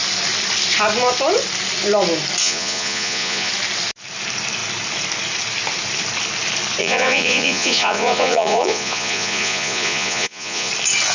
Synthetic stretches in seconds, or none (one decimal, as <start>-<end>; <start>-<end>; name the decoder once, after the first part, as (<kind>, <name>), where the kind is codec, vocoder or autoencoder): 2.4-3.5 (vocoder, Vocos); 6.8-10.7